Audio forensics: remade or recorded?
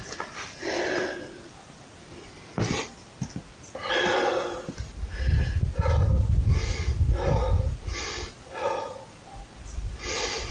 recorded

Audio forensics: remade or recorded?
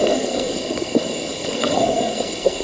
remade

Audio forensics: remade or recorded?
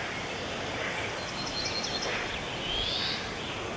recorded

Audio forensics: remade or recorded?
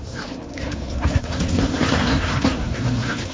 remade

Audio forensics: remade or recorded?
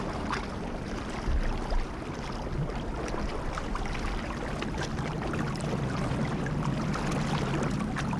recorded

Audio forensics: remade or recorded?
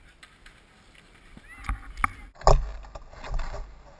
recorded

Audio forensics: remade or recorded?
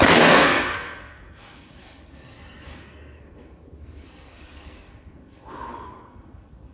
remade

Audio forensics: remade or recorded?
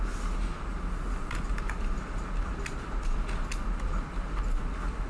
recorded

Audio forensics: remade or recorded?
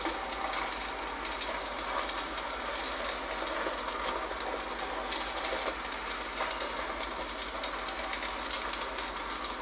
recorded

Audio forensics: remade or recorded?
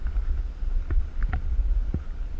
recorded